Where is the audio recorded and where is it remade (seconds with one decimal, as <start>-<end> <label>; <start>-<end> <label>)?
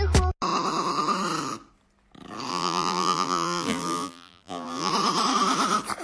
0.0-2.5 recorded; 2.5-4.9 remade; 4.9-6.0 recorded